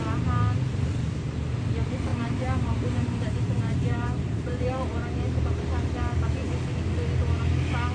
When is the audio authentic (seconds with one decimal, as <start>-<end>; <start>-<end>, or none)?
0.0-2.1; 6.8-7.9